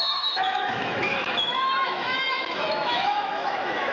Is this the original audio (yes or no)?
no